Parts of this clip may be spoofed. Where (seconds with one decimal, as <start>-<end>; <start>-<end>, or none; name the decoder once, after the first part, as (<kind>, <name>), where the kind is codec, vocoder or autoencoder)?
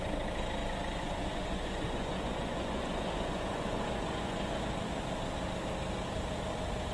0.6-4.6 (vocoder, Vocos)